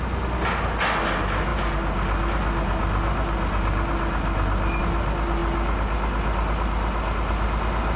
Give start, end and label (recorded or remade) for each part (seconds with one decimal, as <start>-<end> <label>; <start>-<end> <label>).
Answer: 0.0-8.0 recorded